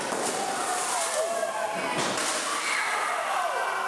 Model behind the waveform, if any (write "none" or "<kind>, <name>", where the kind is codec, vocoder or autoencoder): none